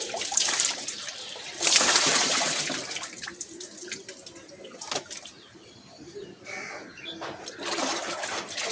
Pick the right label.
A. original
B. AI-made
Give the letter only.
B